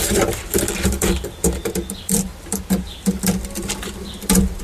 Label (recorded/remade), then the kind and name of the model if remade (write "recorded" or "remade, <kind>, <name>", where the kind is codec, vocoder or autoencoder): remade, vocoder, BigVGAN v2